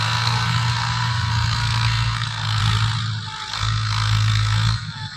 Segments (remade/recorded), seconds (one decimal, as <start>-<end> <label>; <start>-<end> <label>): 0.0-2.6 remade; 2.6-3.5 recorded; 3.5-5.2 remade